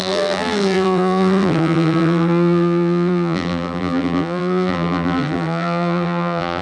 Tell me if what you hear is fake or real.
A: fake